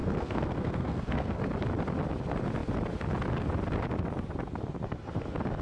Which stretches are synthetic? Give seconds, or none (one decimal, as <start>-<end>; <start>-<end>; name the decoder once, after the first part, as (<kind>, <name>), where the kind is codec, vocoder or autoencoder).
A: 0.0-1.4 (codec, SNAC)